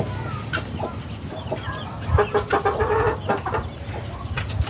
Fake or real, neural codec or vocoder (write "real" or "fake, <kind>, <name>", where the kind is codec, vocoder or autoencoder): real